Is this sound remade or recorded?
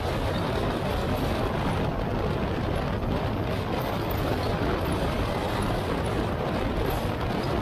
recorded